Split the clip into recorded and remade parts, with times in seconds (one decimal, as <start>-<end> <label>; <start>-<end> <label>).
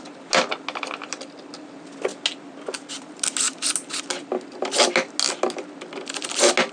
0.0-6.7 recorded